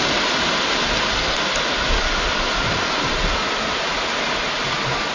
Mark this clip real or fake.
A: real